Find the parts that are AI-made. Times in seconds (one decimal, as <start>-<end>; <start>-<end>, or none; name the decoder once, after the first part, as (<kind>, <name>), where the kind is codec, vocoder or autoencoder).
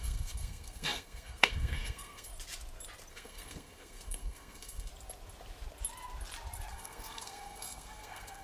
0.0-2.3 (codec, SNAC); 3.1-4.9; 6.7-8.4